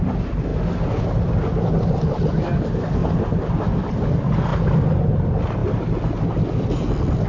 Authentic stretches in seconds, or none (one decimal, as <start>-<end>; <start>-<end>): 0.0-4.5; 5.1-7.3